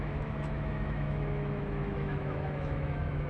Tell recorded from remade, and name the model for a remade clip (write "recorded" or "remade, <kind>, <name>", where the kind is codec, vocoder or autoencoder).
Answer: remade, autoencoder, DAC-VAE